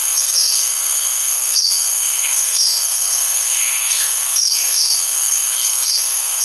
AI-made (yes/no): yes